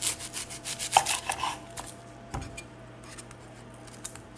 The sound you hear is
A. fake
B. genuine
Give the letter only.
B